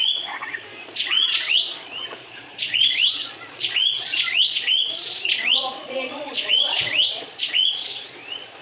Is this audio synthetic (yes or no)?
yes